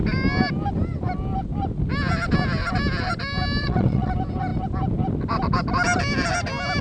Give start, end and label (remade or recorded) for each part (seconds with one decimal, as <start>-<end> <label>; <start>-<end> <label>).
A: 0.0-3.6 recorded; 3.6-4.1 remade; 4.1-6.8 recorded